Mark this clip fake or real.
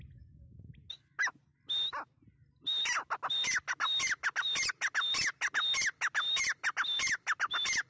real